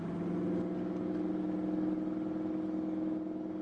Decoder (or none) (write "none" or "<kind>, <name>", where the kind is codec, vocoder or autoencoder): none